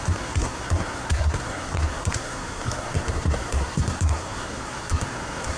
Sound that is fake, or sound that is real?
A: fake